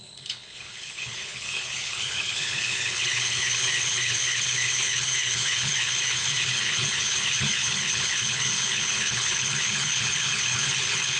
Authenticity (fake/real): fake